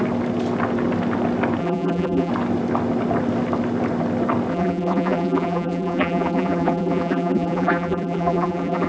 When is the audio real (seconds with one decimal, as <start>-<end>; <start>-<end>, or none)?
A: 0.0-1.6; 2.3-4.5